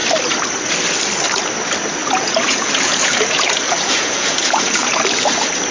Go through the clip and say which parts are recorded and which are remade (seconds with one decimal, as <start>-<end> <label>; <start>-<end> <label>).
0.0-2.0 recorded; 2.0-5.0 remade; 5.0-5.7 recorded

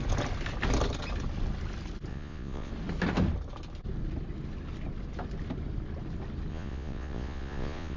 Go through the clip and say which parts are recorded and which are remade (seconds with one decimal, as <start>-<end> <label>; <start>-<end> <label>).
0.0-2.1 recorded; 2.1-2.7 remade; 2.7-6.5 recorded; 6.5-8.0 remade

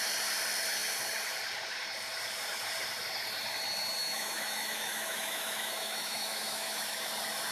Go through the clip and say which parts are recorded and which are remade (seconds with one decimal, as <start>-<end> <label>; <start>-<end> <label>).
0.0-4.0 recorded; 4.0-7.1 remade; 7.1-7.5 recorded

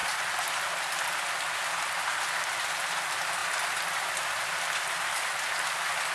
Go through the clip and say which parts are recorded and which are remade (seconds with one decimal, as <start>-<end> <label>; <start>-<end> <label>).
0.0-6.1 recorded

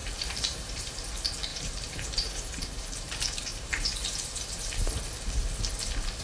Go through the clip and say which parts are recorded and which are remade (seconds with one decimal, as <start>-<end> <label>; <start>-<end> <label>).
0.0-1.1 remade; 1.1-1.5 recorded; 1.5-5.0 remade; 5.0-6.2 recorded

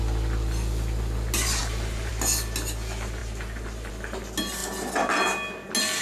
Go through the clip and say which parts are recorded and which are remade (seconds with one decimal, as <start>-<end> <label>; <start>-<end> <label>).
0.0-1.6 recorded; 1.6-2.1 remade; 2.1-3.2 recorded; 3.2-3.9 remade; 3.9-6.0 recorded

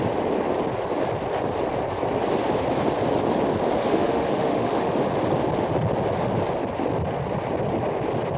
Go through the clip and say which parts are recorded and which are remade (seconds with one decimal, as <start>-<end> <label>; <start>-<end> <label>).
0.0-3.8 recorded; 3.8-4.9 remade; 4.9-8.4 recorded